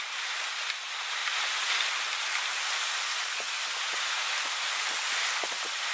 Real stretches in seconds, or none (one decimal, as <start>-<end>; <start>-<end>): 0.0-5.9